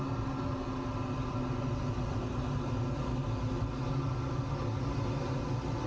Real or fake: real